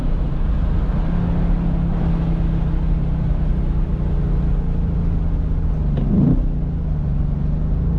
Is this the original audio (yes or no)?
yes